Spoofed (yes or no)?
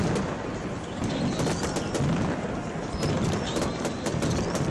no